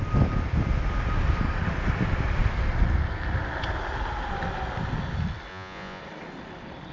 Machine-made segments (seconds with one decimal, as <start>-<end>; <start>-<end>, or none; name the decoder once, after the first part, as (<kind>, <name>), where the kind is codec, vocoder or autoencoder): 5.5-6.0 (vocoder, Vocos)